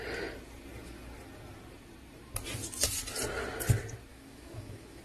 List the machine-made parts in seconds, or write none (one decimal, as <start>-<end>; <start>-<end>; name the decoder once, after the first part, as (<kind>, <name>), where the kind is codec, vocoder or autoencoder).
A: 4.1-5.0 (autoencoder, DAC-VAE)